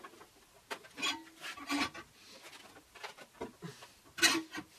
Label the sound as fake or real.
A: real